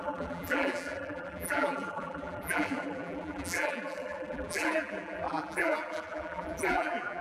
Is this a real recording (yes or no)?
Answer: no